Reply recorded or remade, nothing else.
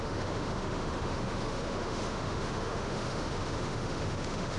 remade